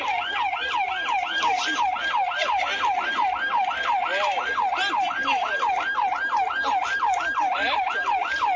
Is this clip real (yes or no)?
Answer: yes